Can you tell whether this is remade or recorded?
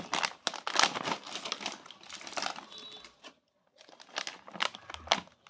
recorded